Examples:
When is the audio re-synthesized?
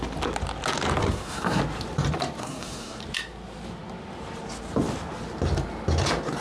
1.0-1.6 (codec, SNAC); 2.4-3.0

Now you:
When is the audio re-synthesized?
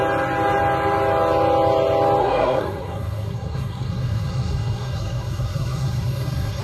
2.2-6.6 (codec, SNAC)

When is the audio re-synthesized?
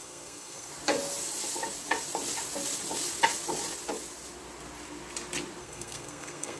0.0-0.7 (codec, SNAC); 5.6-6.6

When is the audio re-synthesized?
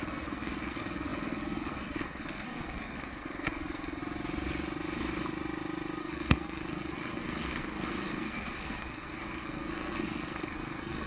0.0-4.0 (codec, SNAC); 6.0-11.1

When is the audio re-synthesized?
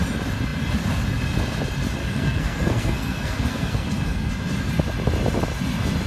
2.0-4.3 (codec, SNAC)